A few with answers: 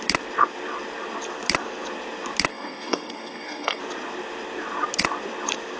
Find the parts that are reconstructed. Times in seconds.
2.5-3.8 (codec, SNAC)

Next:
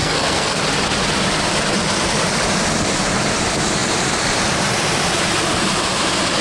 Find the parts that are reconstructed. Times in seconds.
0.0-0.6 (codec, SNAC)